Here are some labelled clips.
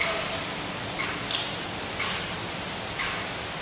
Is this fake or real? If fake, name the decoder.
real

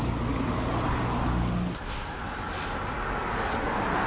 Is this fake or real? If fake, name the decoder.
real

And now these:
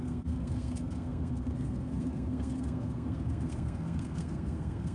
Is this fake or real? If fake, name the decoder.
fake, codec, SNAC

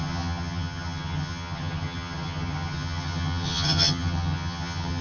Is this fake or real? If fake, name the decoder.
fake, vocoder, HiFi-GAN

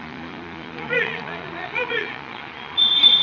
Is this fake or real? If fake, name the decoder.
fake, vocoder, Vocos